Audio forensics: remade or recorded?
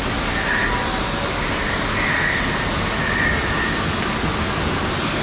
recorded